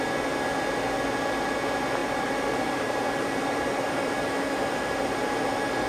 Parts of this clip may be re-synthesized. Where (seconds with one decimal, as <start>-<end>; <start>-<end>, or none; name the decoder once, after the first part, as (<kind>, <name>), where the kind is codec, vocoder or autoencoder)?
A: 2.0-5.5 (vocoder, BigVGAN v2)